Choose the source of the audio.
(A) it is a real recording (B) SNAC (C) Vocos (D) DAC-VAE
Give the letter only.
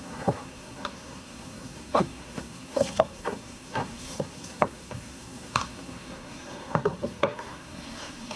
B